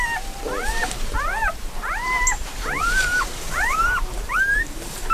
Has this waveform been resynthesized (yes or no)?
yes